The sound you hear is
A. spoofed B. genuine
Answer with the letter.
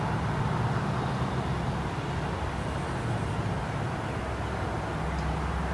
B